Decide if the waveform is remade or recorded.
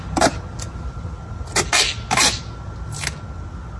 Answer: recorded